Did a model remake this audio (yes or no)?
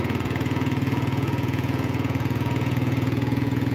yes